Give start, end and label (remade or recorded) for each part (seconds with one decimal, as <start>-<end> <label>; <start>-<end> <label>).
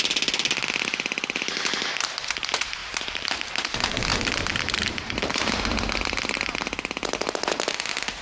0.0-2.8 recorded; 2.8-3.3 remade; 3.3-8.2 recorded